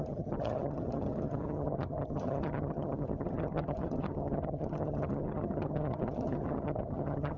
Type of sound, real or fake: fake